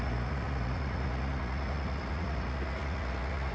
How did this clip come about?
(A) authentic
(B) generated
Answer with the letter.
B